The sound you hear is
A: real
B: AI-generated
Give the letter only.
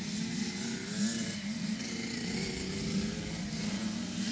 A